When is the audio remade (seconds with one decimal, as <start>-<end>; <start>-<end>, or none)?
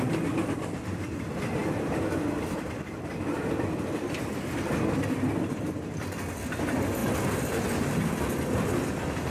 0.0-7.0; 7.9-9.3